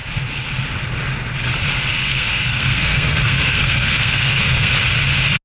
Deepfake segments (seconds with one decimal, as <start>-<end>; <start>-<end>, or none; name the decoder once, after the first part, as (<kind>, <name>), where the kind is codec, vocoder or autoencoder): 1.9-4.7 (codec, SNAC)